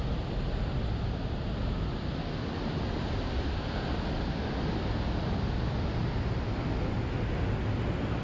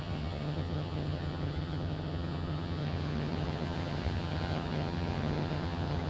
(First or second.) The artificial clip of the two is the second